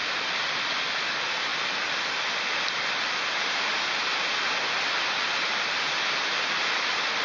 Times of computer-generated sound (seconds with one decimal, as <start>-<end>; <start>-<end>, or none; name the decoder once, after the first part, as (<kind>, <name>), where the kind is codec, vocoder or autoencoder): none